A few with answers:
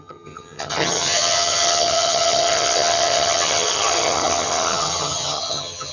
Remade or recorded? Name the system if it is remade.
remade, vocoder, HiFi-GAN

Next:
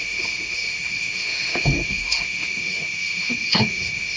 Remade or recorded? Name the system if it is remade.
remade, autoencoder, DAC-VAE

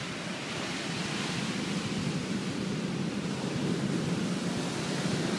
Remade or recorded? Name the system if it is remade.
remade, vocoder, BigVGAN v2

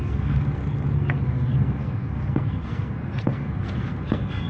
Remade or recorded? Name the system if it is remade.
remade, codec, SNAC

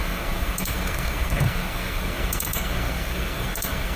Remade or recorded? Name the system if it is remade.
remade, codec, SNAC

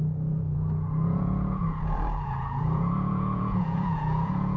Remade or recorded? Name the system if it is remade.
remade, vocoder, Vocos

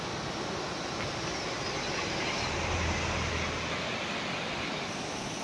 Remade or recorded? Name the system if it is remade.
recorded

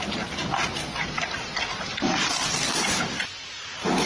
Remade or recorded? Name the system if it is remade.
recorded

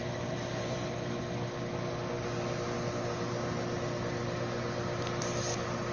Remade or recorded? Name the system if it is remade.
recorded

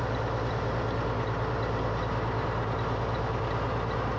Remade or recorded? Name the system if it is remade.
recorded